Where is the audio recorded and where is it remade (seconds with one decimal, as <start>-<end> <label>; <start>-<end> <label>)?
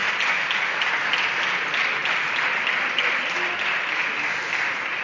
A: 0.0-5.0 recorded